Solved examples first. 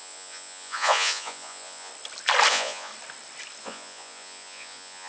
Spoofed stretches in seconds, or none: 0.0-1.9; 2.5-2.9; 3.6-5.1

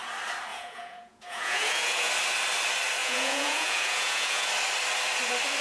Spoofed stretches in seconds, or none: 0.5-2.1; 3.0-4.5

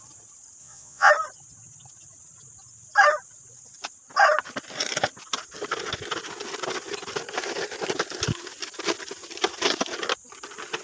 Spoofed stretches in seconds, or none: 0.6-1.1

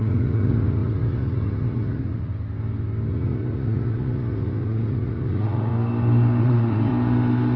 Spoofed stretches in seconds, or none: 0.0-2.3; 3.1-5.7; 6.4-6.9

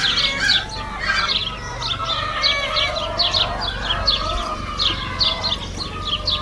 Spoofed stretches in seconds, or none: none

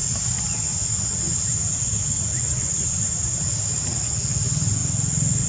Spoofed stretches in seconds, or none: 2.3-3.2

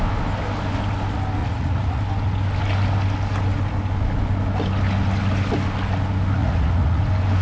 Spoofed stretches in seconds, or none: 1.4-2.0; 6.4-7.0

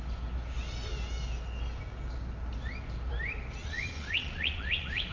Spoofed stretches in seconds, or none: 3.6-5.1